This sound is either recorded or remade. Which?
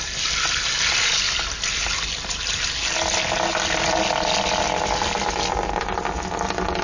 recorded